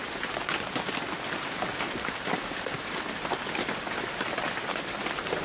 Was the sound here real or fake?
real